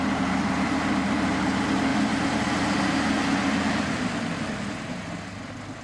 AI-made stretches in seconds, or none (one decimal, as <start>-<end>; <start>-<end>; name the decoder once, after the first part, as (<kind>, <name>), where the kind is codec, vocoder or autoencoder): none